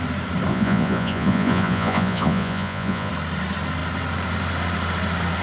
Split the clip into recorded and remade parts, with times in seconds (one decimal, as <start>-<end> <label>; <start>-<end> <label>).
0.0-0.5 recorded; 0.5-3.1 remade; 3.1-5.4 recorded